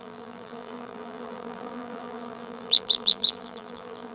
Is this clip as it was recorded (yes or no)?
no